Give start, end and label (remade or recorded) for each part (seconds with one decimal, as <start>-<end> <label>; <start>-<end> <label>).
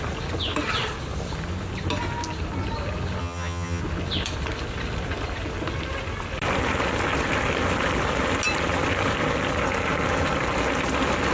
0.0-3.2 recorded; 3.2-3.8 remade; 3.8-11.3 recorded